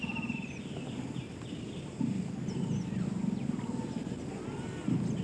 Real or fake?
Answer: real